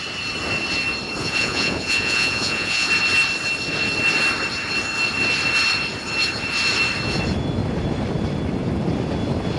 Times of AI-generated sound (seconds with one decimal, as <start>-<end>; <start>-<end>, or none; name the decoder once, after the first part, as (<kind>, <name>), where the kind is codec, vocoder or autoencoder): 1.2-2.9 (vocoder, Vocos)